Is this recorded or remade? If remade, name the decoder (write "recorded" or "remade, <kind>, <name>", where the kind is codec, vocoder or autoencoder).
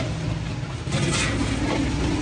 recorded